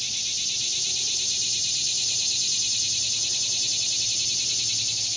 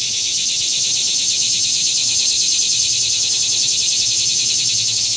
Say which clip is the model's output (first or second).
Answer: second